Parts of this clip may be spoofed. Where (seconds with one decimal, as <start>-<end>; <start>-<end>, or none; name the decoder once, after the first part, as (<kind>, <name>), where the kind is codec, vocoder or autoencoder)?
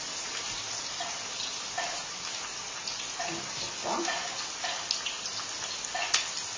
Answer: none